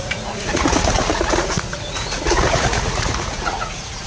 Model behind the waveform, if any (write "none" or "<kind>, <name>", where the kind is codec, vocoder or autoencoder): vocoder, Vocos